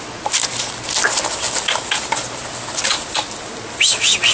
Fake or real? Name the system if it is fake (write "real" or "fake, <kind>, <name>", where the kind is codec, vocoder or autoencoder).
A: real